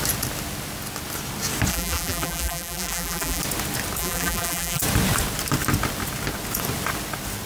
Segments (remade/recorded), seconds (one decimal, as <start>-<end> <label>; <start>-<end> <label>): 0.0-1.7 recorded; 1.7-3.4 remade; 3.4-4.0 recorded; 4.0-4.8 remade; 4.8-7.5 recorded